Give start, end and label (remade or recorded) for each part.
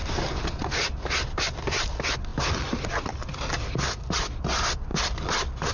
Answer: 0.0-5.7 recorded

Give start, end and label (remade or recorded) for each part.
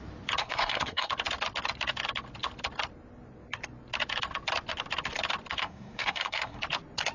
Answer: 0.0-0.4 recorded; 0.4-1.1 remade; 1.1-5.6 recorded; 5.6-6.6 remade; 6.6-7.1 recorded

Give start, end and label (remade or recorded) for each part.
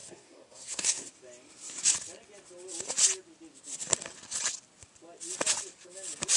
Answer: 0.0-1.1 remade; 1.1-6.4 recorded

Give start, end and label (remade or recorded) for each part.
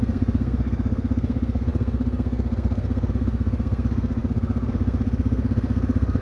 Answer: 0.0-6.2 remade